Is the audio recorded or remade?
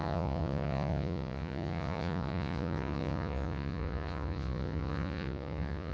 remade